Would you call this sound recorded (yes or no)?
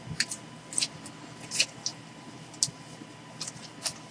yes